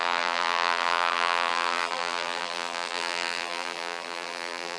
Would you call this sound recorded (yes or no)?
no